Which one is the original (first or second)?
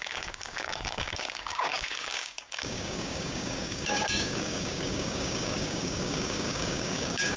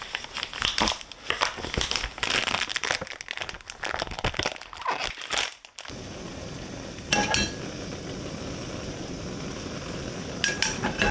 second